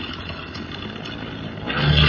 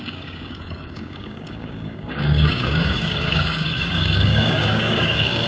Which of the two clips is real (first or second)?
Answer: first